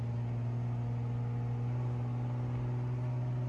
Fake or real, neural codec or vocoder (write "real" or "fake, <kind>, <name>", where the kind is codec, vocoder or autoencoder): real